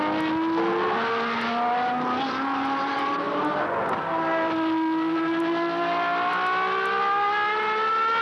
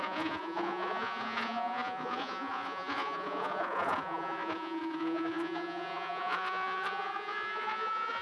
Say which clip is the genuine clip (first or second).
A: first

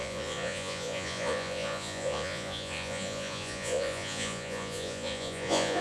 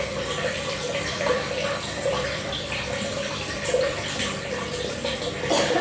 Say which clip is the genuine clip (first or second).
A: second